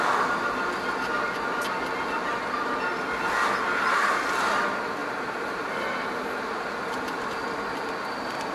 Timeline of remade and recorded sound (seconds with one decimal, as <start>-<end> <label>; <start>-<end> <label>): 0.0-8.5 recorded